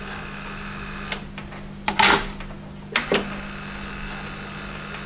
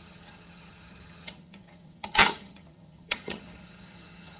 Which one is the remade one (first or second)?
second